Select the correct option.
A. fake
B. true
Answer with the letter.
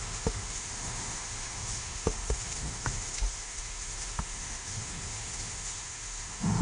A